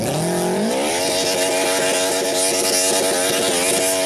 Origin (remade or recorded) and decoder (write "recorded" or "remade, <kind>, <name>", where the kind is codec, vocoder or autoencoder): recorded